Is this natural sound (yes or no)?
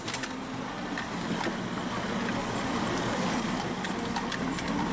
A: yes